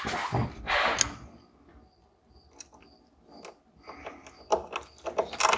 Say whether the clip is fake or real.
real